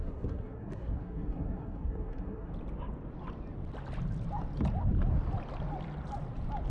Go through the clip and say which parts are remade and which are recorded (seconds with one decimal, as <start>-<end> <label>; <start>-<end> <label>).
0.0-2.5 remade; 2.5-6.7 recorded